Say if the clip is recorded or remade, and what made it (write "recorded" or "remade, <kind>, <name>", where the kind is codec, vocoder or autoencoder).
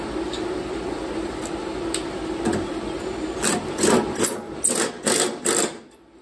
remade, vocoder, BigVGAN v2